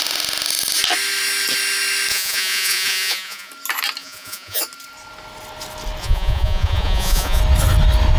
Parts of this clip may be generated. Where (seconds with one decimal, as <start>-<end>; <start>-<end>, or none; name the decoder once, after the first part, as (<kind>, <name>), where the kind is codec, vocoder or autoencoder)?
2.1-3.5 (vocoder, Vocos); 4.0-4.6; 6.0-7.4